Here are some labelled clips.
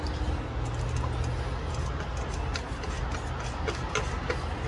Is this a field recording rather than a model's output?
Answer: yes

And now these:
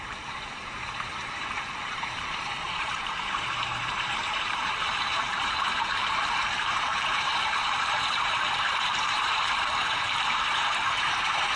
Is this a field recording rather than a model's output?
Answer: no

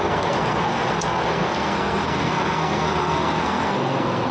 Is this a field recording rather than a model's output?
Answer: no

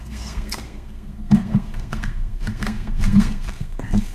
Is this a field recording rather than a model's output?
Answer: no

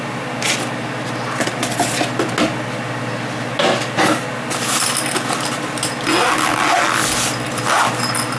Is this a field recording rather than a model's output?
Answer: yes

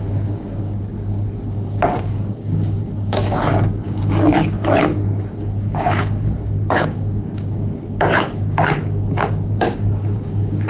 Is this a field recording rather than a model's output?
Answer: no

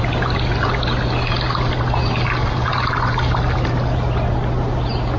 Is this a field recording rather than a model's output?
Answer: yes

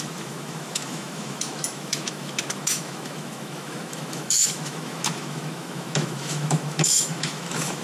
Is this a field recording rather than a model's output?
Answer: no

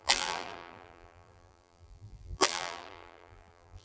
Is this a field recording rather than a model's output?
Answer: no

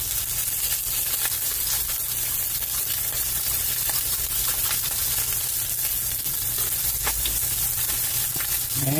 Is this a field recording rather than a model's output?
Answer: yes